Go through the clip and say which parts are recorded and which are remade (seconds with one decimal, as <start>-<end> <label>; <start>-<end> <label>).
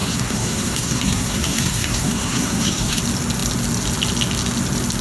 0.0-3.0 remade; 3.0-5.0 recorded